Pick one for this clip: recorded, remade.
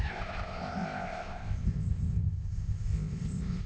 remade